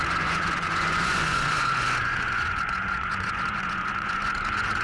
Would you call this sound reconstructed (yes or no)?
yes